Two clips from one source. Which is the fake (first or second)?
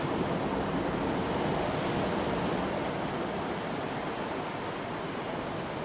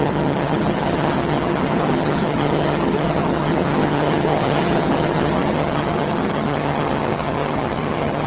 second